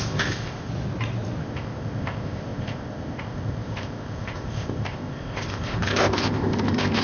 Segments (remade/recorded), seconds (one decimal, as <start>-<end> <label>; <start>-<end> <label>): 0.0-0.7 remade; 0.7-1.4 recorded; 1.4-7.0 remade